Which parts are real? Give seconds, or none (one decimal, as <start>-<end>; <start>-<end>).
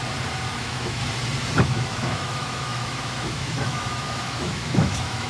0.0-0.6; 1.0-1.6